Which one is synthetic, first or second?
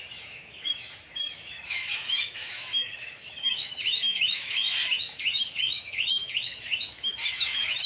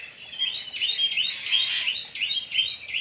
first